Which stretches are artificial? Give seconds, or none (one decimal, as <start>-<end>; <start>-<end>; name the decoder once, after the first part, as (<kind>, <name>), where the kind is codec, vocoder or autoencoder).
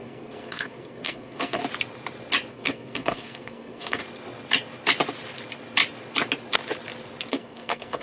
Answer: 0.0-1.6 (codec, SNAC); 2.5-4.0; 7.3-8.0